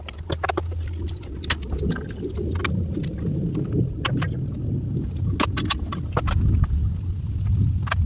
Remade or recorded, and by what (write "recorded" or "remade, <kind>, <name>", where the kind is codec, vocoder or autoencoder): recorded